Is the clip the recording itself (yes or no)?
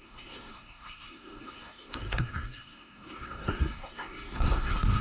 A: no